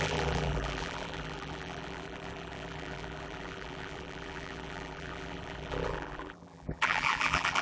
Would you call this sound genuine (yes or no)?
no